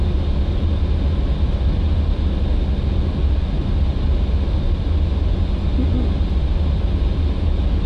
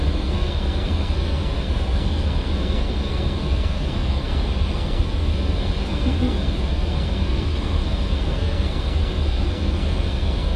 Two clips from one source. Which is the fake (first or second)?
second